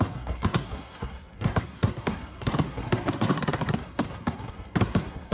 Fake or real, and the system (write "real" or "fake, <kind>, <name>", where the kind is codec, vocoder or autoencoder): fake, codec, SNAC